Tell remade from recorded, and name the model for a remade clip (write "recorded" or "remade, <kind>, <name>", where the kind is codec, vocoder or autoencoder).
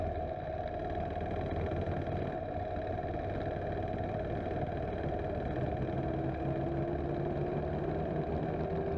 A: recorded